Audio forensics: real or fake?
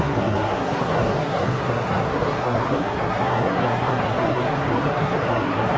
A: fake